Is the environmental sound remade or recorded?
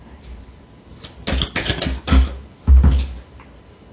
recorded